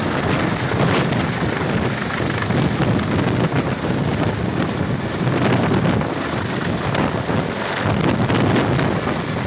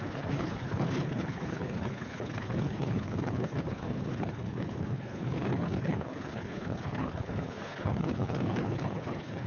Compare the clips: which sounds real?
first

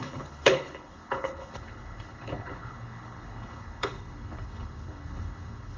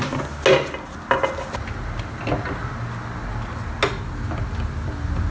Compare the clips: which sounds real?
second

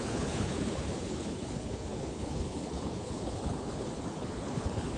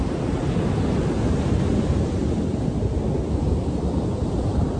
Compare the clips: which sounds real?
second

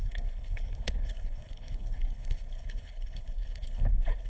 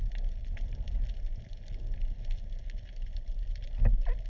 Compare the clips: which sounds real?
second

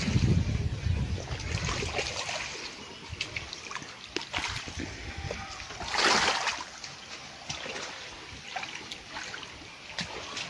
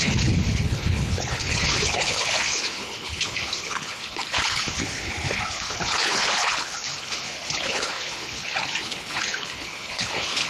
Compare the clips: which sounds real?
first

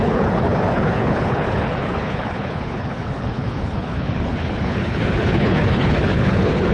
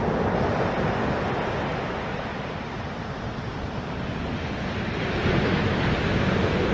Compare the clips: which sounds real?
second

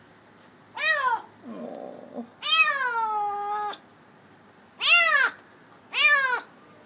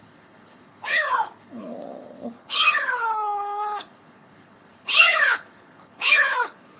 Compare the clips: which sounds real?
first